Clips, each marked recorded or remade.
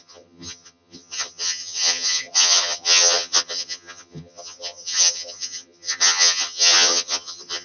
remade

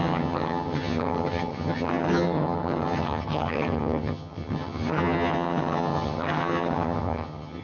remade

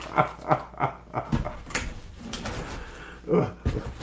recorded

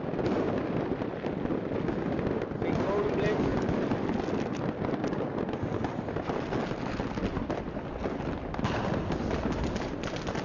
recorded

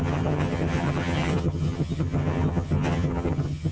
remade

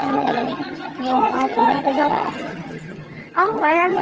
remade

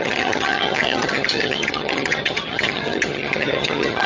remade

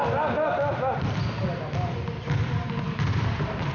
recorded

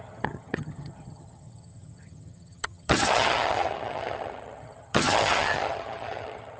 remade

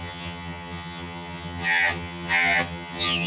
remade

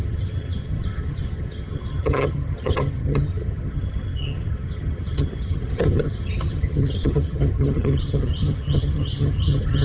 remade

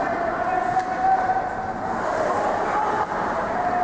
recorded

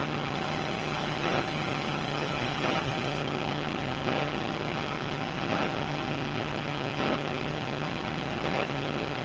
remade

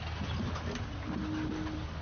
recorded